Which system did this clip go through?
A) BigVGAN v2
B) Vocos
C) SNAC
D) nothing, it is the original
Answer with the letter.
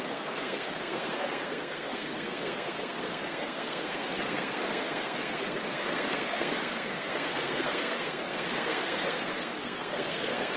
C